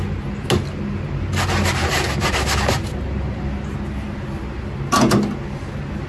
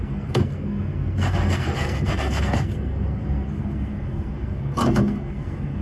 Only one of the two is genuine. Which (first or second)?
first